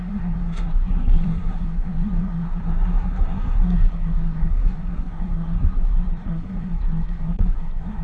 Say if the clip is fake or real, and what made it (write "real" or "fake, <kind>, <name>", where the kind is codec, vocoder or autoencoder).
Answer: fake, codec, SNAC